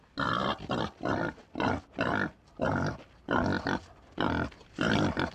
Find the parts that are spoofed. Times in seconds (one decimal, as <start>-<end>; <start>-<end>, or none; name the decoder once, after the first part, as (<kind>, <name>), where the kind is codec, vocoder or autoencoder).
none